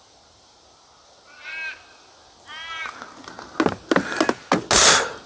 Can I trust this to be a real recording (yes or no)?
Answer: yes